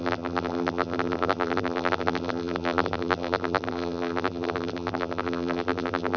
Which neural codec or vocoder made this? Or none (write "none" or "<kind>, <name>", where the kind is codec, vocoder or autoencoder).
vocoder, BigVGAN v2